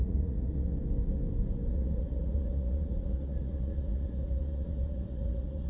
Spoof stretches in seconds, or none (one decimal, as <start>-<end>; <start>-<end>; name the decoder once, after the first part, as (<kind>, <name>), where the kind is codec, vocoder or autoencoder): 0.0-0.7 (vocoder, Vocos); 1.7-5.7